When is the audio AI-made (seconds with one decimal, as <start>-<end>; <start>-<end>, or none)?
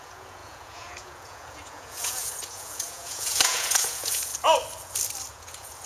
0.0-4.3; 5.3-5.9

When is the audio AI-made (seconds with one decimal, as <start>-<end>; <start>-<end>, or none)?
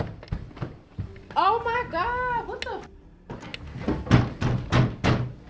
none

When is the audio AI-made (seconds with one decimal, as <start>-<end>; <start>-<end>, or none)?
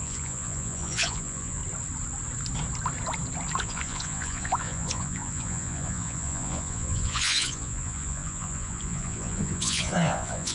0.0-1.6; 3.6-10.5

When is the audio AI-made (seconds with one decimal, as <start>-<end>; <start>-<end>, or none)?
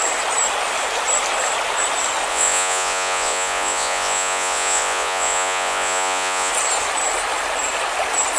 2.3-6.5